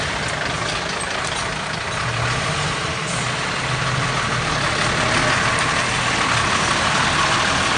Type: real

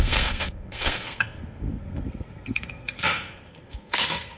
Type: fake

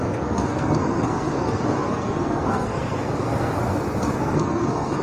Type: fake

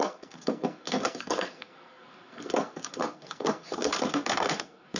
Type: fake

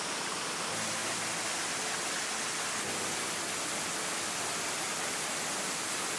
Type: real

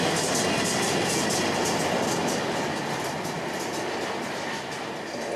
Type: real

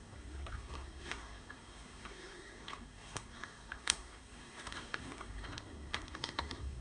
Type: fake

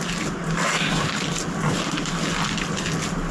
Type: real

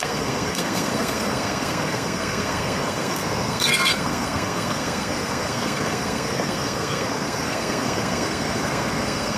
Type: fake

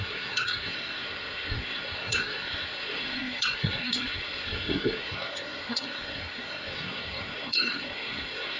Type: fake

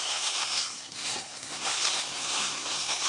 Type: fake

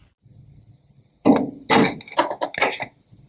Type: real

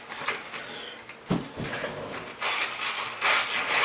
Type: real